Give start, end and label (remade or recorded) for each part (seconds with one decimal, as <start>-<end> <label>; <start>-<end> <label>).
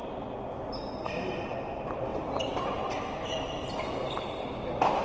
0.0-5.0 recorded